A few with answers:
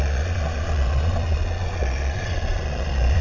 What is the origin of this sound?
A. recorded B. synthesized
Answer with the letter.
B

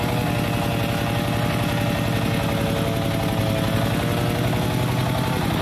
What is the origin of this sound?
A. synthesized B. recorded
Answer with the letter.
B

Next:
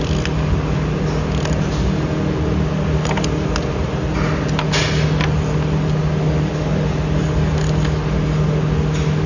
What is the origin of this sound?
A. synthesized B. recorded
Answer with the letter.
B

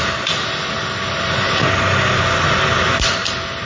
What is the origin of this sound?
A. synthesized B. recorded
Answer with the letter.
B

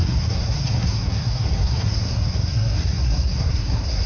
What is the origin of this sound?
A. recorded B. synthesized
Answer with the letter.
B